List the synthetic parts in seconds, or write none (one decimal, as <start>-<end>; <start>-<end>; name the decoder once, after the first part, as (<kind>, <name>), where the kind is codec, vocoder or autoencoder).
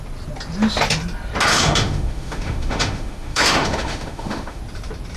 1.5-4.6 (autoencoder, DAC-VAE)